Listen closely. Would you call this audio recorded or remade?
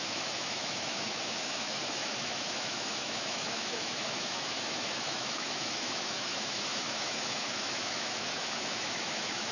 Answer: remade